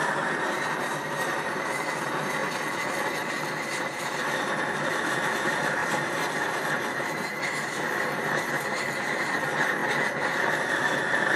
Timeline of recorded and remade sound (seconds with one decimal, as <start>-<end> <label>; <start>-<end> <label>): 0.0-2.4 remade; 2.4-3.7 recorded; 3.7-11.4 remade